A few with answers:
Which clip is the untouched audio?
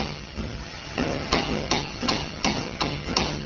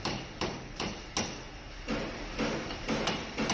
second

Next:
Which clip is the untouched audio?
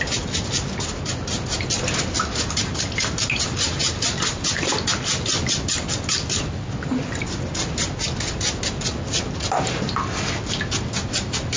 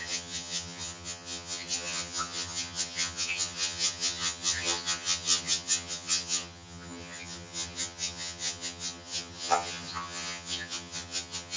first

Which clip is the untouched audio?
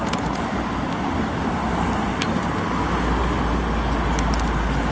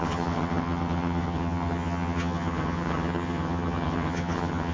first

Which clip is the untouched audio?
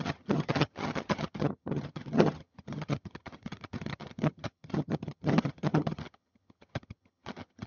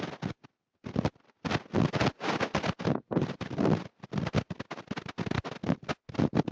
second